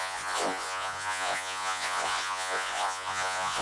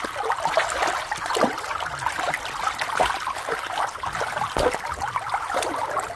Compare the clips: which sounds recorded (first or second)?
second